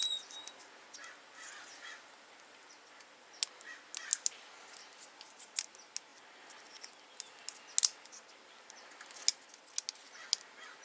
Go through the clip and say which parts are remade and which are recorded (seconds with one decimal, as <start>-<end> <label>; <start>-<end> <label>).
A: 0.0-10.8 recorded